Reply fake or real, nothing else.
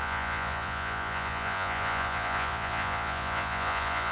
fake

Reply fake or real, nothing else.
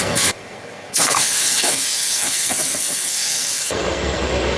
fake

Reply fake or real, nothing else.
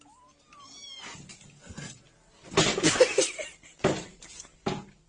real